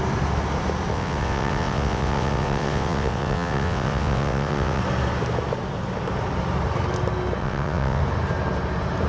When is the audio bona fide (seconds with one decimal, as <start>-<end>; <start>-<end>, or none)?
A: 0.0-0.9; 4.8-7.4; 8.0-9.1